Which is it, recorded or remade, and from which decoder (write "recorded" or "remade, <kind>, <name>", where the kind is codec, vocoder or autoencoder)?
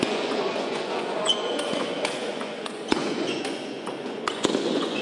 remade, vocoder, Vocos